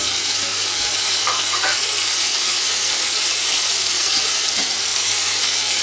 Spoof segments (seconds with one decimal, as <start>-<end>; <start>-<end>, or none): 0.0-5.8